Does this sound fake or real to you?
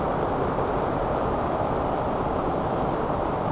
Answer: fake